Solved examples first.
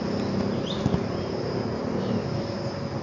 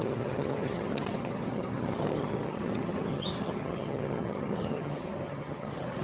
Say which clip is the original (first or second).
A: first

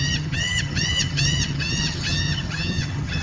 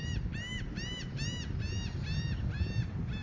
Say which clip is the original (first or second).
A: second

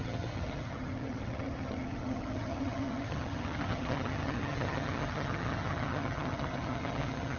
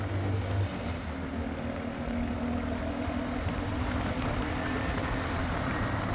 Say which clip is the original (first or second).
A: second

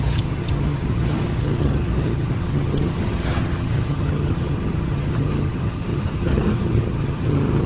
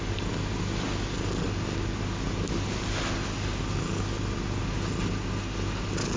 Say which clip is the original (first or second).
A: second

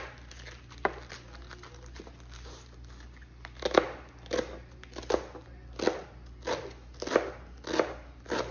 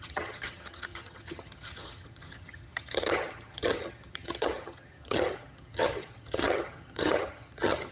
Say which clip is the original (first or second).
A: first